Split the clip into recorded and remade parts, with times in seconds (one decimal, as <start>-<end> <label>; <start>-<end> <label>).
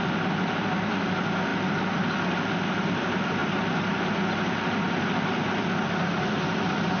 0.0-1.5 remade; 1.5-2.5 recorded; 2.5-3.4 remade; 3.4-5.0 recorded; 5.0-7.0 remade